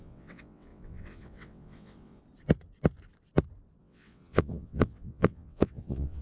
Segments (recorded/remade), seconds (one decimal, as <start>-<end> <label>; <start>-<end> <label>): 0.0-2.2 remade; 2.2-3.8 recorded; 3.8-6.2 remade